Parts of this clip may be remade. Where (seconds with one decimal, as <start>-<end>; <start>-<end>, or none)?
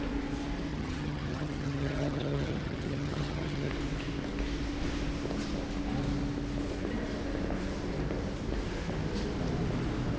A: 0.7-3.7